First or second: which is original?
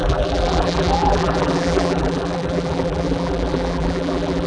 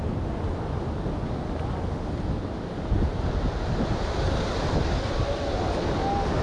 second